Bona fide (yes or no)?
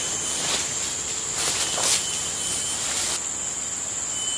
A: yes